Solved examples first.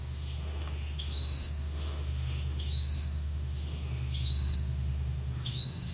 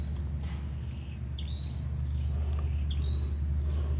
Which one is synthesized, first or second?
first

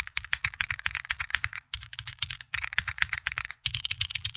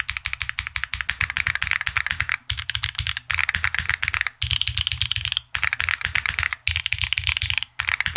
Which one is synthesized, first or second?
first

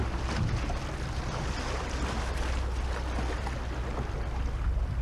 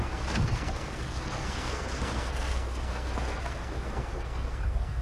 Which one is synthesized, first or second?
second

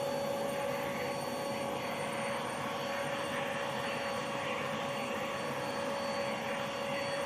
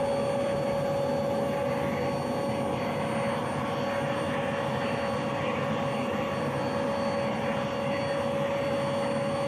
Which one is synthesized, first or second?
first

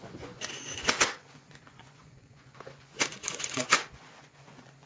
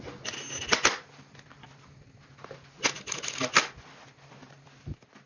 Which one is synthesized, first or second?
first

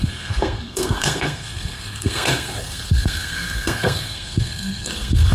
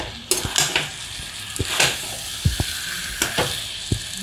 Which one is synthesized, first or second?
first